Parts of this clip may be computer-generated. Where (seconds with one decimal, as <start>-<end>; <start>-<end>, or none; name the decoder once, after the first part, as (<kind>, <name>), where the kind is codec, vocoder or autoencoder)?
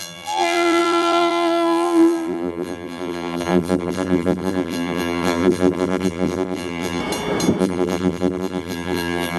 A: 0.0-7.0 (vocoder, BigVGAN v2); 7.6-9.4